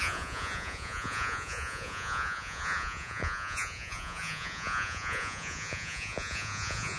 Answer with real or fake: fake